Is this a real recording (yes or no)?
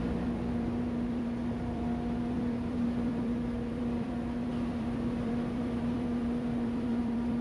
no